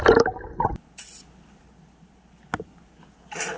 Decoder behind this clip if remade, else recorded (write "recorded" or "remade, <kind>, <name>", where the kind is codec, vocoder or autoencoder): recorded